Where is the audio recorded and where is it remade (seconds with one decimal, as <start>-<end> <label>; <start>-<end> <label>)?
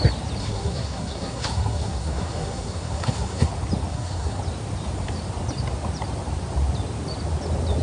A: 0.0-0.4 recorded; 0.4-3.5 remade; 3.5-3.9 recorded; 3.9-4.4 remade; 4.4-7.8 recorded